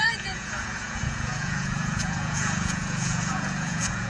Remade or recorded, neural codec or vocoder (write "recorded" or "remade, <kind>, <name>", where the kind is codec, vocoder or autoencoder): remade, vocoder, Vocos